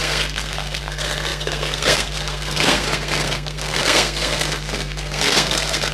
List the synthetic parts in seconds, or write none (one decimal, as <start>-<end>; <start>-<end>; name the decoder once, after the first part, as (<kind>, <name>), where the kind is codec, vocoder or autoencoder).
0.0-5.9 (codec, SNAC)